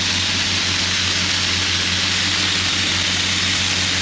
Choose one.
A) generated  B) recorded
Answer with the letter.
B